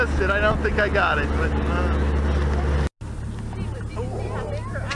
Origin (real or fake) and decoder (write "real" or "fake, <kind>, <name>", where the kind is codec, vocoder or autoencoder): real